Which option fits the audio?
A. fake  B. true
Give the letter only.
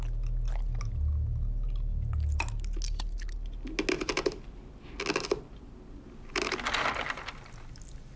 B